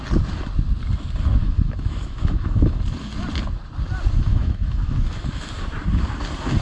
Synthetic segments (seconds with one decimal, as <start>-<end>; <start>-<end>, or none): 1.4-2.8; 4.3-5.5